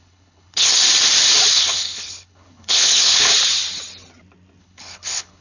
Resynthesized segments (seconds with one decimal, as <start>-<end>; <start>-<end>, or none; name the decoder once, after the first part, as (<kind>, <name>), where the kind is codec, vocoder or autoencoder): 0.0-0.8 (codec, HILCodec); 1.5-3.3; 4.6-5.4

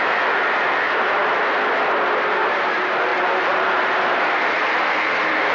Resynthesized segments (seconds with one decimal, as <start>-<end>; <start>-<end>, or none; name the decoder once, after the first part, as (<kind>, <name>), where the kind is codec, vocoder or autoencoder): 0.0-1.2 (vocoder, BigVGAN v2); 2.3-5.5

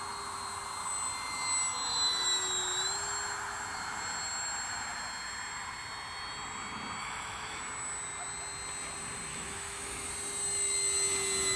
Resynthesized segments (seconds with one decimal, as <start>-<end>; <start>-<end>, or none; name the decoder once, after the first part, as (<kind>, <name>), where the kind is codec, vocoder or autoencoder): 7.0-7.6 (autoencoder, DAC-VAE); 9.3-10.1

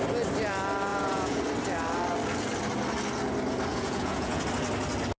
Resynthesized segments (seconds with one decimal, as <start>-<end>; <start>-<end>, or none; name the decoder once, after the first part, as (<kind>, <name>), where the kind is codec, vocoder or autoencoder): 0.9-1.4 (vocoder, Vocos); 3.7-4.4

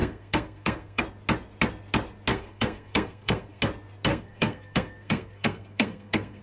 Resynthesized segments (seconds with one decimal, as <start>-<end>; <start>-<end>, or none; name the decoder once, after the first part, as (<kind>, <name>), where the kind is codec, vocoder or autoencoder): 0.0-1.0 (codec, SNAC); 2.3-3.6; 4.1-6.4

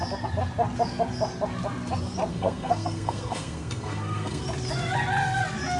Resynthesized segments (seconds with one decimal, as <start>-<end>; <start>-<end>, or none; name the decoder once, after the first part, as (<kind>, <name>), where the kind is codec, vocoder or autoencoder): 2.3-4.4 (codec, SNAC)

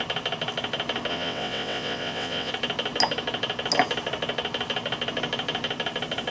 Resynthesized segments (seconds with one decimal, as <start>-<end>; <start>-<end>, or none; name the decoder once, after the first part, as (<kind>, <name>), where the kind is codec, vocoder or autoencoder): 1.1-2.5 (vocoder, WaveNeXt)